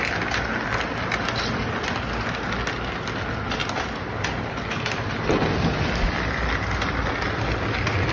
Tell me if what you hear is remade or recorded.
recorded